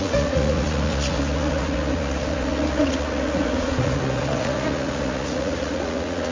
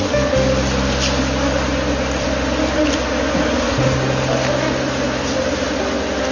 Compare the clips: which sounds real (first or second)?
second